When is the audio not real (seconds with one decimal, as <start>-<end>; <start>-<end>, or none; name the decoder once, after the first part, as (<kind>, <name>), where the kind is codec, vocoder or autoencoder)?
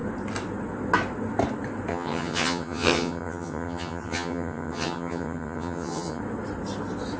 1.9-6.2 (vocoder, HiFi-GAN)